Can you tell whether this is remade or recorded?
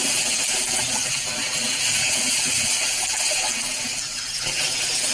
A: recorded